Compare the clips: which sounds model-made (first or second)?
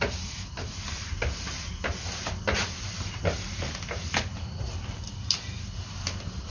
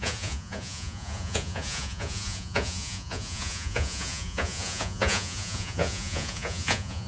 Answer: second